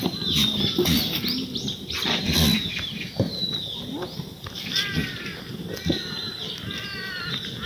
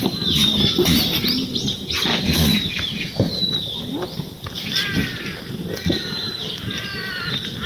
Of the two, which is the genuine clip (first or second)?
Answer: first